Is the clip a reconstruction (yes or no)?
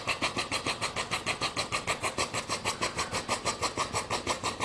no